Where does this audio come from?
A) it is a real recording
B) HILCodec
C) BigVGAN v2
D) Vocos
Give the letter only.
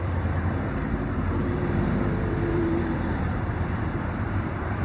C